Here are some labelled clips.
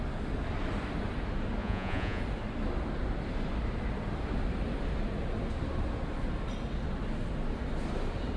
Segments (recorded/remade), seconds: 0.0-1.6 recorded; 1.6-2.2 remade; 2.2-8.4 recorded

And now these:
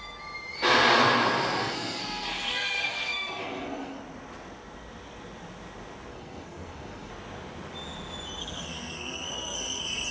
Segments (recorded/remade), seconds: 0.0-1.6 recorded; 1.6-4.0 remade; 4.0-6.1 recorded; 6.1-7.1 remade; 7.1-8.4 recorded; 8.4-10.1 remade

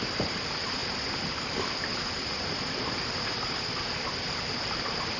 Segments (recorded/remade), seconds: 0.0-5.2 recorded

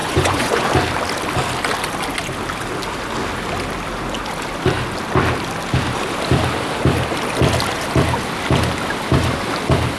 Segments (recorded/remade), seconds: 0.0-0.7 remade; 0.7-10.0 recorded

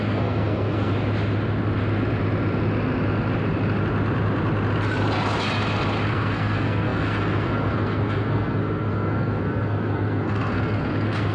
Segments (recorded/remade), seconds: 0.0-0.9 remade; 0.9-6.1 recorded; 6.1-11.3 remade

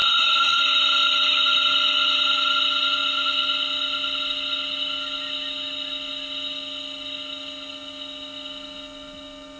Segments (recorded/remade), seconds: 0.0-0.6 remade; 0.6-9.6 recorded